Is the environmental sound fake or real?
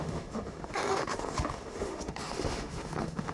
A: fake